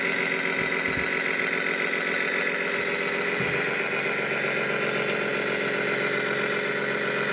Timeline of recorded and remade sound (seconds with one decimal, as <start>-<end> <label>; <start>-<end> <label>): 0.0-7.3 recorded